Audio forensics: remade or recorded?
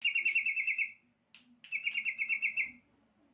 recorded